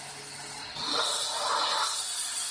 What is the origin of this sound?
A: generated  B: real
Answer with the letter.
B